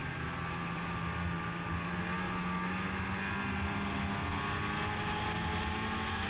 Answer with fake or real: real